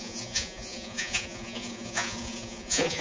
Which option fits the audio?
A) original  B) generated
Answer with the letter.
B